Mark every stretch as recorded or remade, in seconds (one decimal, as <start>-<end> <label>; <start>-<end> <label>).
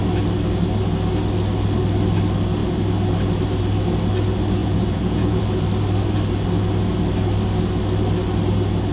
0.0-4.6 recorded; 4.6-5.4 remade; 5.4-8.9 recorded